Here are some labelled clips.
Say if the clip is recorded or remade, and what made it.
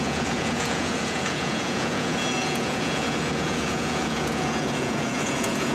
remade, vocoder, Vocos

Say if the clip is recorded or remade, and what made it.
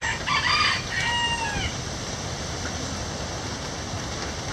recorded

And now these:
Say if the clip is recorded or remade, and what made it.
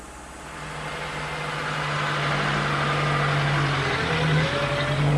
recorded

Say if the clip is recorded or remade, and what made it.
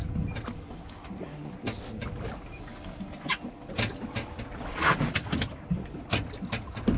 recorded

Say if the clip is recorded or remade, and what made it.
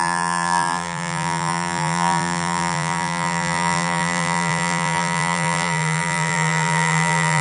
remade, vocoder, BigVGAN v2